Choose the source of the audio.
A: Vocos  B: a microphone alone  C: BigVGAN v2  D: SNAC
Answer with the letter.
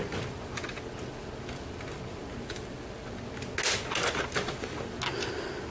B